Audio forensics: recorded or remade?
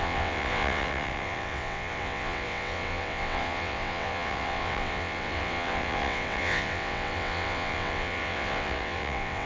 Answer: remade